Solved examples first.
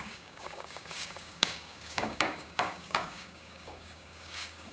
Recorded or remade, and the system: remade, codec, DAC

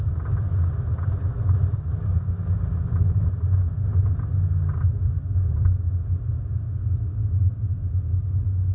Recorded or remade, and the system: recorded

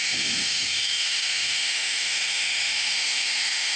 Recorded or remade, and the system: remade, autoencoder, DAC-VAE